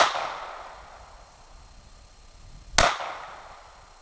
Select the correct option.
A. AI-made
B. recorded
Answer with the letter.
B